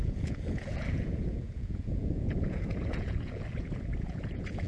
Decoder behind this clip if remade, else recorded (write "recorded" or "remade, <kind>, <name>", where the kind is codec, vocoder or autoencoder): remade, vocoder, Vocos